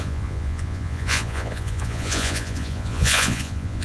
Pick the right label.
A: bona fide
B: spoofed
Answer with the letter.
B